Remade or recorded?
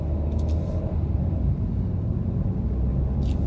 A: recorded